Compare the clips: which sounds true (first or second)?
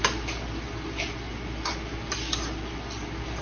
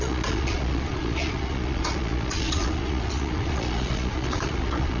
first